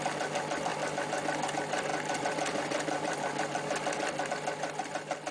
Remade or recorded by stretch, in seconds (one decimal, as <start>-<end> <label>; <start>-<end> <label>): 0.0-1.9 recorded; 1.9-4.3 remade; 4.3-5.3 recorded